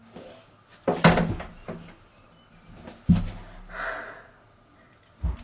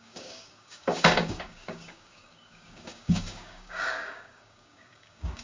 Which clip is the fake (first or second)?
second